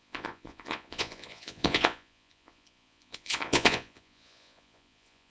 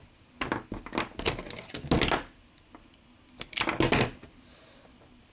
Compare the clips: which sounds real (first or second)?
second